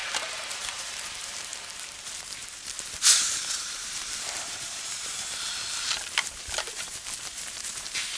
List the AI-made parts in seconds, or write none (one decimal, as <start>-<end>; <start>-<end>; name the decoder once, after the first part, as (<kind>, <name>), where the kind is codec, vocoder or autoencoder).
0.5-1.5 (vocoder, BigVGAN v2); 2.0-8.2